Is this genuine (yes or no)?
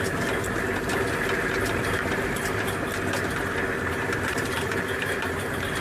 no